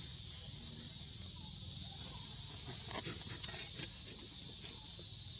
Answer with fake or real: real